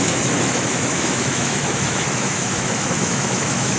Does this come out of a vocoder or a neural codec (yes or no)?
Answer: yes